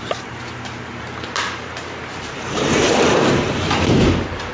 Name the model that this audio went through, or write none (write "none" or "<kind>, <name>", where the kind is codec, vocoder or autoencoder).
vocoder, BigVGAN v2